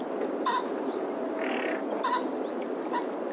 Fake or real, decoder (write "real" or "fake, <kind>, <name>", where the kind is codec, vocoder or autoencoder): real